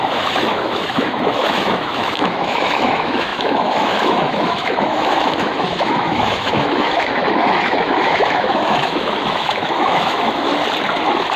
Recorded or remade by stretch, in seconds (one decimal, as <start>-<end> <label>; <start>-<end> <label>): 0.0-10.5 remade; 10.5-11.4 recorded